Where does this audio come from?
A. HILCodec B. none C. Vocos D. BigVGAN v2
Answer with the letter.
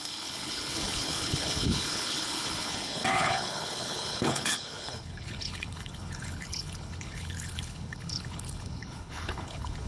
A